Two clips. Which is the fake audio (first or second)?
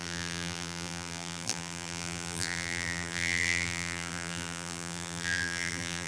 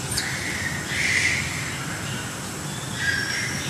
first